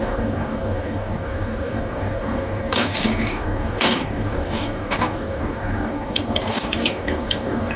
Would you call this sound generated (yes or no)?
yes